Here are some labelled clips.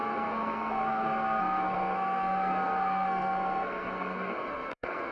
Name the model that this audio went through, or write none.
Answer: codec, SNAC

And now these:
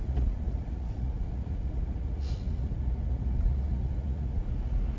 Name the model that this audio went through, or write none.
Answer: vocoder, Vocos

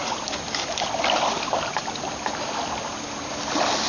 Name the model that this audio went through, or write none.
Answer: none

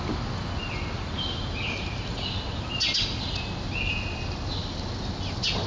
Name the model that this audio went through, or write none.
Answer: none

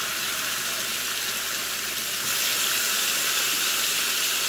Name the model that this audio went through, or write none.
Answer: none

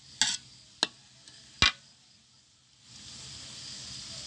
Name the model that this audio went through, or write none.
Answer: none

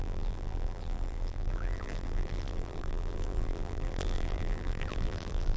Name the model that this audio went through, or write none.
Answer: vocoder, BigVGAN v2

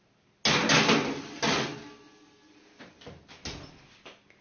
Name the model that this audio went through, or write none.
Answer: none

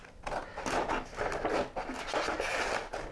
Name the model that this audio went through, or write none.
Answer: none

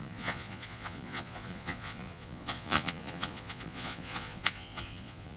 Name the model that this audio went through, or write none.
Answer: vocoder, Vocos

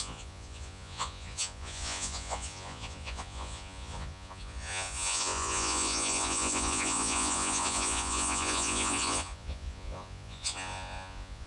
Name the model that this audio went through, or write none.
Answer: vocoder, Vocos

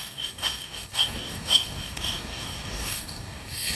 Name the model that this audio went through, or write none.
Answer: codec, DAC